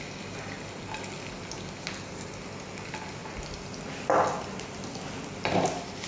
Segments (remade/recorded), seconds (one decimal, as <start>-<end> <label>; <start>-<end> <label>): 0.0-6.1 recorded